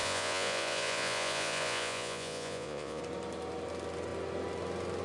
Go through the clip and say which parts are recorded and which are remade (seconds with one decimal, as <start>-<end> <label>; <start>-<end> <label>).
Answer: 0.0-3.0 remade; 3.0-5.0 recorded

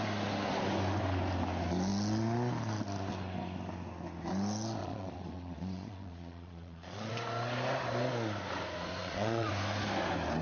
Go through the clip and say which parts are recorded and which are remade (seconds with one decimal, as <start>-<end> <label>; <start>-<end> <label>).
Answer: 0.0-4.8 recorded; 4.8-7.1 remade; 7.1-9.0 recorded; 9.0-9.5 remade; 9.5-10.4 recorded